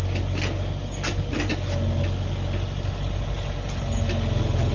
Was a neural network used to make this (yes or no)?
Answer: no